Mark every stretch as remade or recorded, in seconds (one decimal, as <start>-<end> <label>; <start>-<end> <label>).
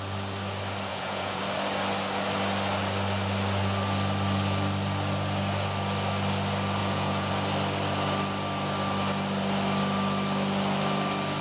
0.0-0.9 recorded; 0.9-1.4 remade; 1.4-6.8 recorded; 6.8-7.3 remade; 7.3-11.4 recorded